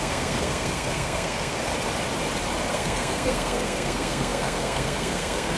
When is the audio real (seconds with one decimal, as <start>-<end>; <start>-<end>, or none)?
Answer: 1.7-2.7